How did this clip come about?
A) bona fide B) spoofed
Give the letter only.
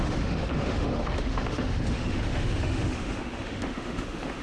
B